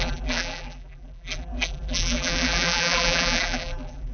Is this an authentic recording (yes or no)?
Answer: no